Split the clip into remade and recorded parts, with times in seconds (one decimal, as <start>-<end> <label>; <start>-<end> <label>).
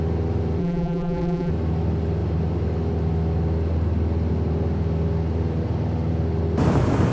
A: 0.0-0.6 recorded; 0.6-1.5 remade; 1.5-7.1 recorded